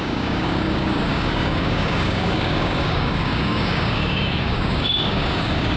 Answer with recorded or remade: remade